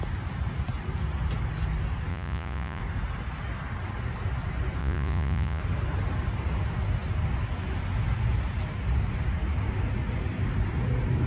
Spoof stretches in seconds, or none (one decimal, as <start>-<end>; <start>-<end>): 2.1-2.8; 4.8-5.6